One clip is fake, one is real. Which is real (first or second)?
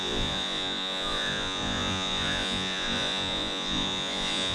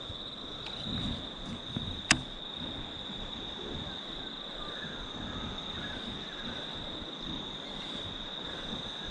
second